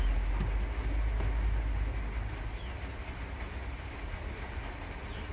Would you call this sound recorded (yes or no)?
yes